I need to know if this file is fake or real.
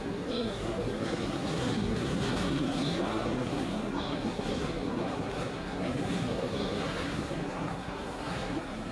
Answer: fake